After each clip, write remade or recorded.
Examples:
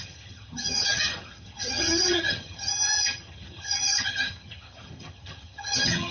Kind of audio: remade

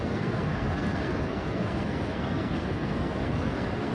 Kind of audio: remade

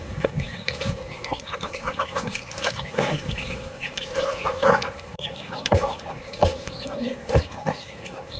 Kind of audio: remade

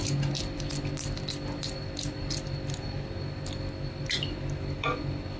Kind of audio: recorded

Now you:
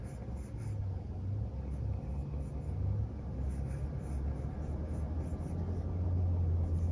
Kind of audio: recorded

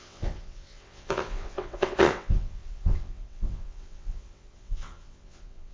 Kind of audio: remade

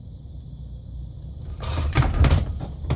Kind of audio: remade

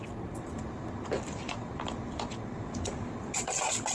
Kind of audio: recorded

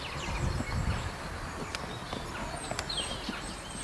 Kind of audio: recorded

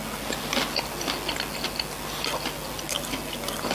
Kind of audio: recorded